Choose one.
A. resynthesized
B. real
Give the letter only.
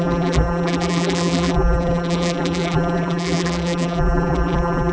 A